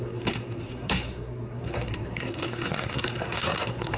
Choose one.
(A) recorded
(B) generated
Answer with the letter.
B